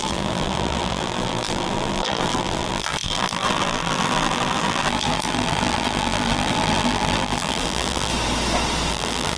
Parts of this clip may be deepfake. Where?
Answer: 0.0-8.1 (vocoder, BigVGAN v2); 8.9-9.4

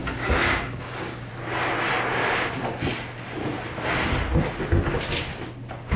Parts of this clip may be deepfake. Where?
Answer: 0.0-1.3 (codec, DAC)

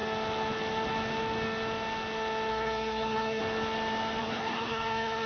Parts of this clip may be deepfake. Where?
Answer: 2.5-3.4 (codec, SNAC); 4.2-5.3

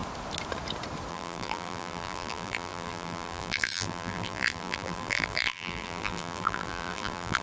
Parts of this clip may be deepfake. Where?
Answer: 1.1-7.4 (vocoder, BigVGAN v2)

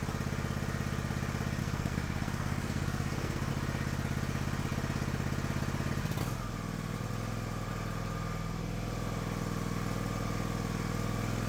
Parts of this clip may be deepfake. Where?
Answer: 1.6-3.5 (codec, SNAC)